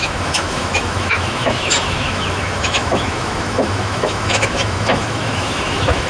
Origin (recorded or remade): remade